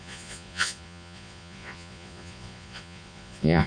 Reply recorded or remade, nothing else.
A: remade